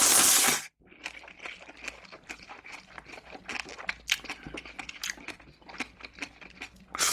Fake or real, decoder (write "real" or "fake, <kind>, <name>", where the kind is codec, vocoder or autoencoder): real